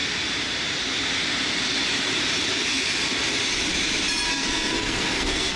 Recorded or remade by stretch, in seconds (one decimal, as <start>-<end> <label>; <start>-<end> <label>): 0.0-4.3 recorded; 4.3-5.6 remade